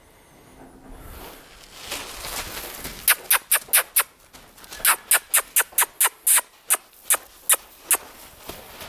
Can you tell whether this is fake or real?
real